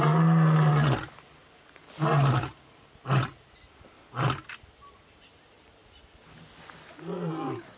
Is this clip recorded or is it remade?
recorded